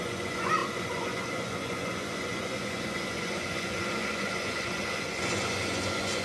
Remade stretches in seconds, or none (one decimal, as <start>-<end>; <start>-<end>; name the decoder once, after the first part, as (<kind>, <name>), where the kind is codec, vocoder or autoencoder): 0.0-6.2 (vocoder, Vocos)